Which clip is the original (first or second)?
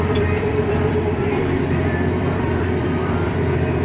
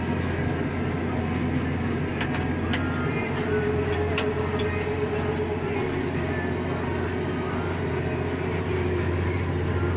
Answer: second